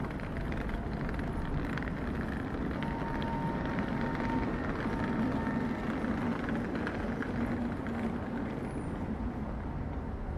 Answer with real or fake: real